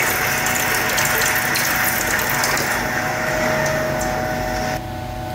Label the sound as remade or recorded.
recorded